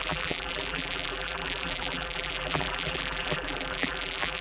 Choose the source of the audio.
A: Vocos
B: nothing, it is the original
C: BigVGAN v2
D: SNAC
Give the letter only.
C